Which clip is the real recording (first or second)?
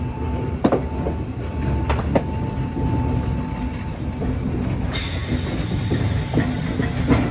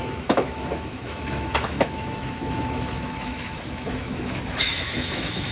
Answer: first